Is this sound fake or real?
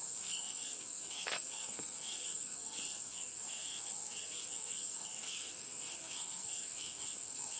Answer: fake